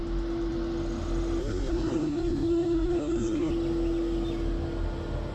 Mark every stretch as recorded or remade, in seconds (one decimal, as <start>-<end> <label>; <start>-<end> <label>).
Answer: 0.0-1.4 recorded; 1.4-3.5 remade; 3.5-5.3 recorded

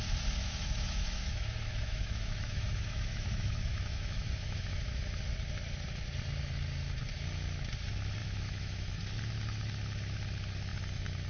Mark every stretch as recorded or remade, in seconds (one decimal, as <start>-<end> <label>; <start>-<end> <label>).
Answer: 0.0-0.4 recorded; 0.4-5.0 remade; 5.0-8.2 recorded; 8.2-9.0 remade; 9.0-11.3 recorded